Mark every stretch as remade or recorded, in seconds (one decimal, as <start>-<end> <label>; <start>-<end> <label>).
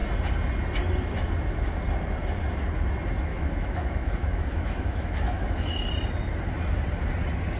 0.0-3.3 recorded; 3.3-5.9 remade; 5.9-7.6 recorded